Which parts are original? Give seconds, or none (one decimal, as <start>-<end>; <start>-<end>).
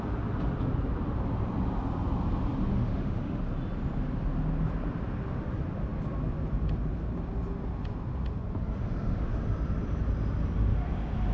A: 0.0-2.7; 3.4-8.8; 9.4-11.3